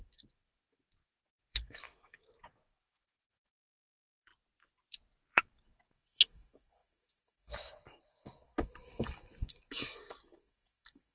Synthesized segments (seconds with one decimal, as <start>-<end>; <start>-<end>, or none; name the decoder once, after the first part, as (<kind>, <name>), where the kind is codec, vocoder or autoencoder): 0.0-4.3 (autoencoder, DAC-VAE); 5.2-11.1